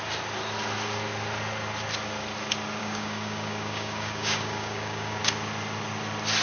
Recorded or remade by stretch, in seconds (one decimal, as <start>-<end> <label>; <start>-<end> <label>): 0.0-2.8 recorded; 2.8-5.2 remade; 5.2-6.4 recorded